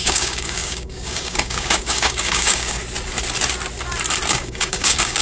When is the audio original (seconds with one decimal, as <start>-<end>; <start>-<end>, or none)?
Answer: 2.8-4.3